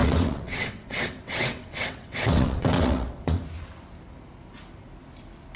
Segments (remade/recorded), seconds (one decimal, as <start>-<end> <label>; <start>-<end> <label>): 0.0-3.4 remade; 3.4-5.6 recorded